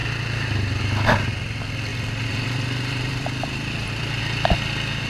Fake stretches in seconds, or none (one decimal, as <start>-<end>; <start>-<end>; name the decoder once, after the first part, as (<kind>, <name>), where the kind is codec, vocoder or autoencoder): 1.9-4.2 (vocoder, BigVGAN v2)